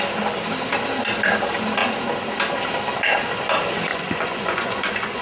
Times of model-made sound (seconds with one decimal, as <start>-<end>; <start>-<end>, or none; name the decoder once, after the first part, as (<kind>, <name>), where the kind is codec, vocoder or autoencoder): 3.9-5.2 (vocoder, Vocos)